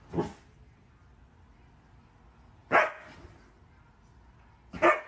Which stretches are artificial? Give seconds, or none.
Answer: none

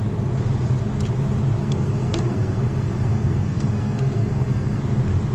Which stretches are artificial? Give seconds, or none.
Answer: 1.6-4.8 (codec, SNAC)